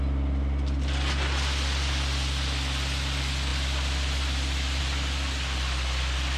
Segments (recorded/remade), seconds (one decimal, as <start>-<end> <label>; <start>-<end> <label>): 0.0-6.4 recorded